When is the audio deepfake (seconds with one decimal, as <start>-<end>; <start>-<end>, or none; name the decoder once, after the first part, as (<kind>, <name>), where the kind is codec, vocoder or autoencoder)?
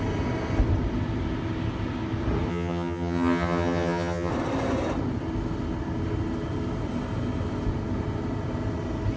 2.5-4.3 (vocoder, HiFi-GAN)